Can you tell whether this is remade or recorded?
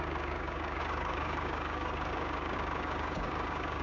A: remade